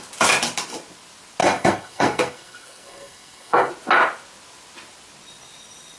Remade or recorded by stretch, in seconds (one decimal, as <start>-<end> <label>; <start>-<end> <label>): 0.0-1.4 recorded; 1.4-3.7 remade; 3.7-6.0 recorded